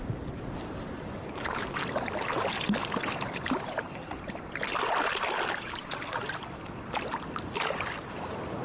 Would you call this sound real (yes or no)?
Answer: yes